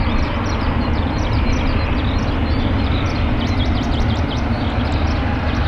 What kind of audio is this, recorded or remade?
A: recorded